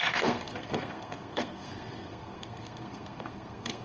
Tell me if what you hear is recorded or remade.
remade